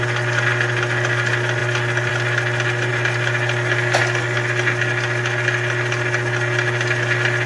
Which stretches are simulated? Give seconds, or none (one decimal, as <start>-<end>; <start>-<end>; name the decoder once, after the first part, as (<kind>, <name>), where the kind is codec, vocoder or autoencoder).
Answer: none